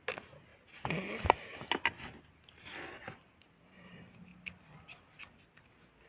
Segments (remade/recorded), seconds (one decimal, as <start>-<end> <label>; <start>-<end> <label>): 0.0-4.3 recorded; 4.3-5.2 remade; 5.2-6.1 recorded